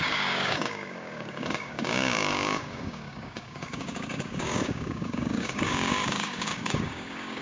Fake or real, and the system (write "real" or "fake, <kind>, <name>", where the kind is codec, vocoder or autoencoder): fake, codec, DAC